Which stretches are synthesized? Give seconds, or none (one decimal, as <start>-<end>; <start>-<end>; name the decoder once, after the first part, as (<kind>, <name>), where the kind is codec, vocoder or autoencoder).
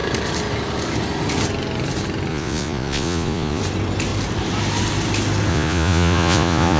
2.3-3.6 (vocoder, Vocos); 5.5-6.8